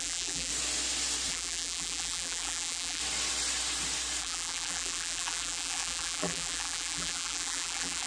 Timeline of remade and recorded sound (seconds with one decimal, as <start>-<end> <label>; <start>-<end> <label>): 0.0-0.5 remade; 0.5-1.3 recorded; 1.3-3.0 remade; 3.0-4.2 recorded; 4.2-8.1 remade